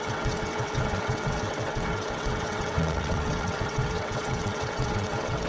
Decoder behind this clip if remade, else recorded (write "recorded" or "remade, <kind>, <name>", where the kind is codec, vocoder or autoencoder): remade, vocoder, WaveNeXt